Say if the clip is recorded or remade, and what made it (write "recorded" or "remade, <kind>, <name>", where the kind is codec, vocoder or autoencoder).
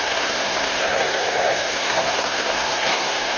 remade, codec, SNAC